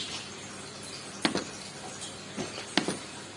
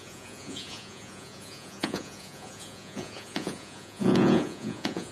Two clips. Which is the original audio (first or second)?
first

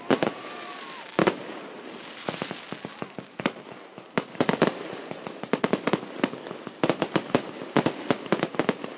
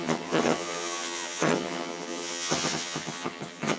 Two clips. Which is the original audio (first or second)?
first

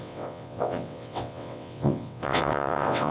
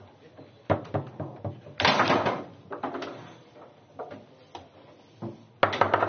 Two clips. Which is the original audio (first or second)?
second